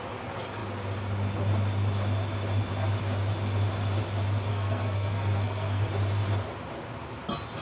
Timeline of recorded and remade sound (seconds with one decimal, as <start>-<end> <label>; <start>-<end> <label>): 0.0-4.5 recorded; 4.5-5.9 remade; 5.9-7.6 recorded